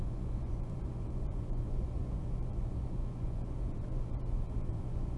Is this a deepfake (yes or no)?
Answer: yes